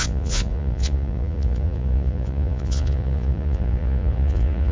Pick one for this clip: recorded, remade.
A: remade